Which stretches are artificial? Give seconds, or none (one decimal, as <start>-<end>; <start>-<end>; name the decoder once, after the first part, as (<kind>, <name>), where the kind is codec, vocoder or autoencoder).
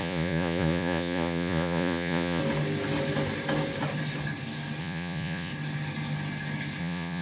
0.0-2.4 (vocoder, Vocos); 4.8-5.5; 6.8-7.2